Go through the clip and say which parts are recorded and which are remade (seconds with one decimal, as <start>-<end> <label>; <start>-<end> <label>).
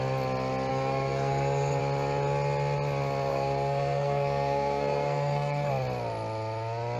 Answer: 0.0-0.7 recorded; 0.7-1.8 remade; 1.8-3.3 recorded; 3.3-5.7 remade; 5.7-7.0 recorded